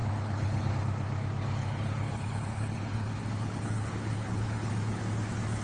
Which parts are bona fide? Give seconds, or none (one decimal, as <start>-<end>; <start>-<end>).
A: 0.7-1.6; 5.0-5.6